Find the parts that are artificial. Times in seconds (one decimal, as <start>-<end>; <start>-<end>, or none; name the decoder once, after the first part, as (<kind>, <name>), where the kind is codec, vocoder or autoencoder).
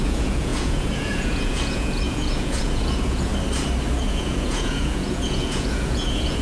0.0-3.3 (vocoder, Vocos); 4.1-6.4